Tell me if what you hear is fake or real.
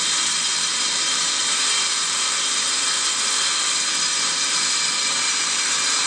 fake